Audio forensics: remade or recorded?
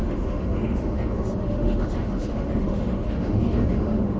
remade